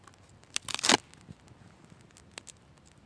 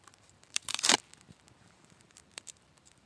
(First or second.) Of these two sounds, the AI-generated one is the second